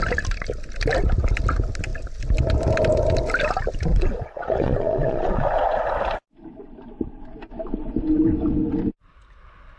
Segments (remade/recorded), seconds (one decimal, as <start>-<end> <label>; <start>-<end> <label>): 0.0-3.9 recorded; 3.9-5.8 remade; 5.8-9.8 recorded